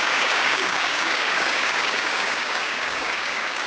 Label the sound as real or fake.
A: fake